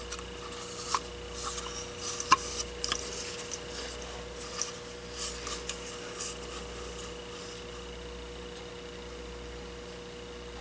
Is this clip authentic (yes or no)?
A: yes